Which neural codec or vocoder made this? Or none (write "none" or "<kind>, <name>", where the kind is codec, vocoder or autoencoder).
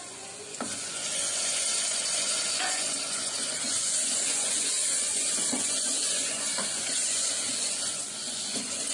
vocoder, Vocos